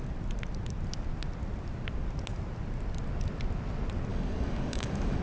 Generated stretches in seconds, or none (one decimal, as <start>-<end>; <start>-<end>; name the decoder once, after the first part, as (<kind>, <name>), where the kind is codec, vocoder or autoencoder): 4.1-5.2 (codec, DAC)